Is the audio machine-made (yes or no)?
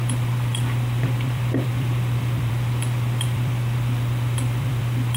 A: yes